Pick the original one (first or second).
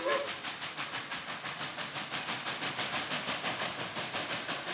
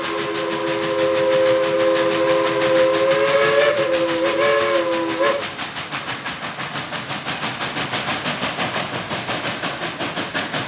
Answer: second